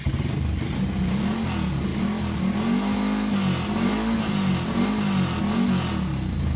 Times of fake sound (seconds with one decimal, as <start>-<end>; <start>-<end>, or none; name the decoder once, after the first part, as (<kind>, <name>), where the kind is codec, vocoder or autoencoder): none

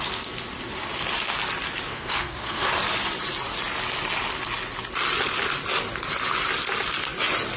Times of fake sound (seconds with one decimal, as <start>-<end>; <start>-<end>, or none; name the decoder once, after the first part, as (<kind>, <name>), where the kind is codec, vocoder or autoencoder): 1.9-2.7 (codec, SNAC)